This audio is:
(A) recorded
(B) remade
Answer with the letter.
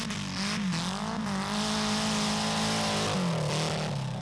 A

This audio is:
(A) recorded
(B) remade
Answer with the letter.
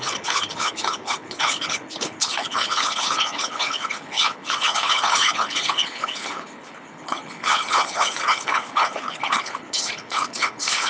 B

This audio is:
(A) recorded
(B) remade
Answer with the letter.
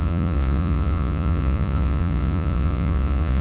B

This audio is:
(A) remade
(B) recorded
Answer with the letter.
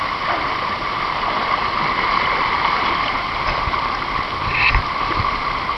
B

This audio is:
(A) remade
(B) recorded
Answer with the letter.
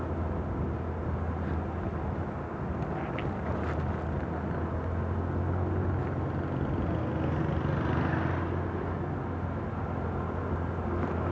B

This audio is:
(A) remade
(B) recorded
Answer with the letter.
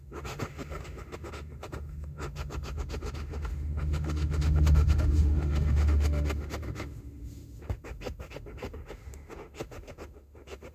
A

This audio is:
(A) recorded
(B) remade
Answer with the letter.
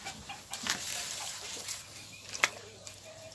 B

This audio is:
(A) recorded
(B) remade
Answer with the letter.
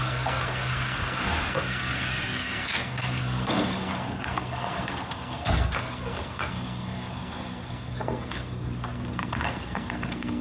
B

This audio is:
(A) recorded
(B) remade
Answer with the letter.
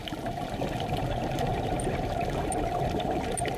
B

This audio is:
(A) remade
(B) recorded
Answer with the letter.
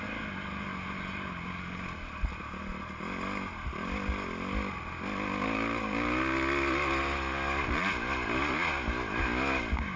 B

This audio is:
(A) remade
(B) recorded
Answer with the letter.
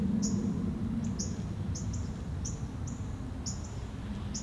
B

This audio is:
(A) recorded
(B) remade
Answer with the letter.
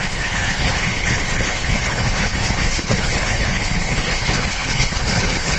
B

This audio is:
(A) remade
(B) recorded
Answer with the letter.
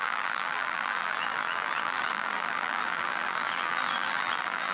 A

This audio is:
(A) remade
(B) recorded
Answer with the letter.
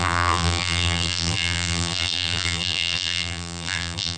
A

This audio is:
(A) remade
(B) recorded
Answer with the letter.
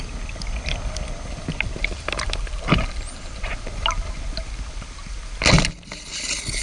B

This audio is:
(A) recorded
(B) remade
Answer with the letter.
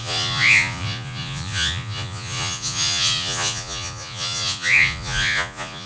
B